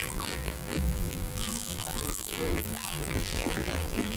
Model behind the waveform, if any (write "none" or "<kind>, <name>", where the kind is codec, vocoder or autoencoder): vocoder, BigVGAN v2